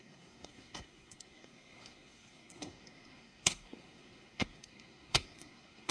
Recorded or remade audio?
remade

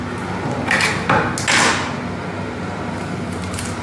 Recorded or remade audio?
recorded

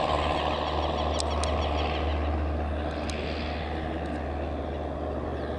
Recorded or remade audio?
recorded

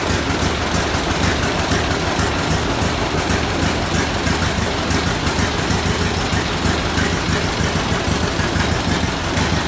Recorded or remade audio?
recorded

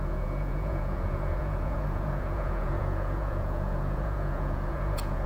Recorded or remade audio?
remade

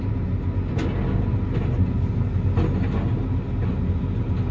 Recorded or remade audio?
recorded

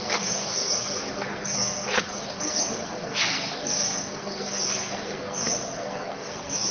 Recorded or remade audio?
remade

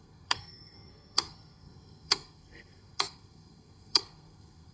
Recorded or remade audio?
remade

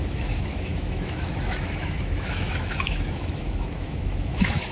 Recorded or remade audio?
remade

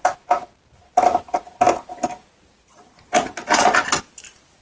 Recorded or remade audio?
recorded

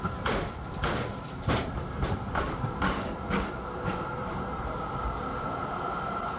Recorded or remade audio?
remade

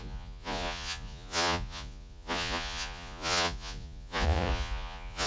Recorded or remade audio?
remade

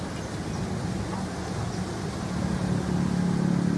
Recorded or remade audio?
recorded